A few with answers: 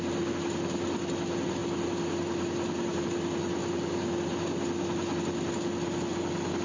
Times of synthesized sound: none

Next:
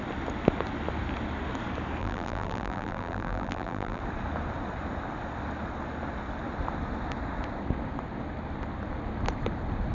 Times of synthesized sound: 2.0-4.0

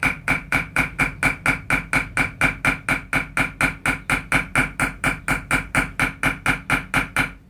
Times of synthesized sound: 0.0-1.0

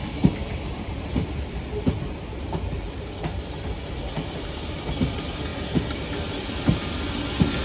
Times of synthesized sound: 0.0-3.5; 5.5-6.1

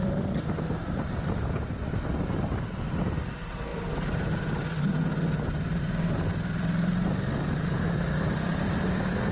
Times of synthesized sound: 0.0-9.3